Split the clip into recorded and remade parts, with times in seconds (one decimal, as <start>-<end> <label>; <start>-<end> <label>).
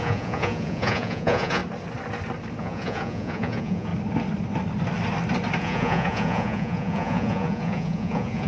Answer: 0.0-1.6 remade; 1.6-2.6 recorded; 2.6-3.9 remade; 3.9-5.6 recorded; 5.6-8.5 remade